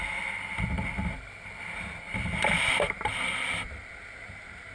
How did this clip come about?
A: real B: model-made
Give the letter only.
A